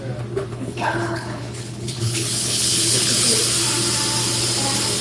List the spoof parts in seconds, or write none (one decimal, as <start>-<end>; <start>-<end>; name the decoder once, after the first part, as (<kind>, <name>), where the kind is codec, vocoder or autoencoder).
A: 0.4-3.4 (codec, HILCodec)